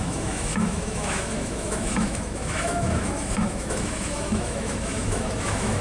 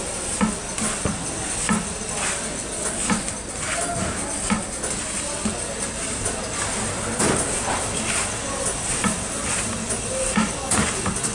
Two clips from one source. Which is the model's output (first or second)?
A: first